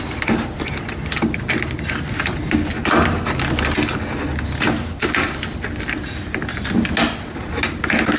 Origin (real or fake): real